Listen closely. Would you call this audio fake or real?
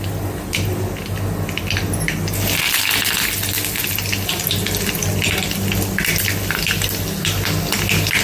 real